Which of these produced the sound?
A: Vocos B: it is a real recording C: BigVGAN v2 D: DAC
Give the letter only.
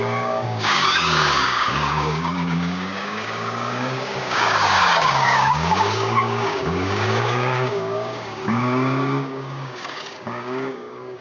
D